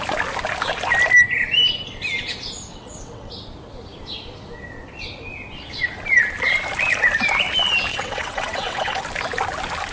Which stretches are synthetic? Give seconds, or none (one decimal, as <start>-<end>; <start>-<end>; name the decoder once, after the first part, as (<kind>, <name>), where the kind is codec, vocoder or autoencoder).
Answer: 2.7-3.3 (vocoder, WaveNeXt); 7.9-9.0